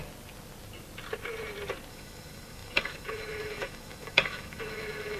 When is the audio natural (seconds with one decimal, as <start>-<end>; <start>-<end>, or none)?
0.0-1.9